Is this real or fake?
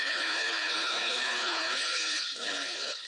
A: fake